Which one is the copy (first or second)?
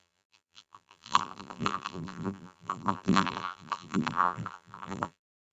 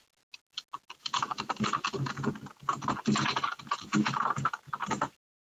first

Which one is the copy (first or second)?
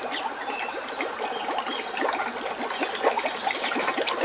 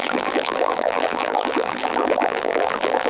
second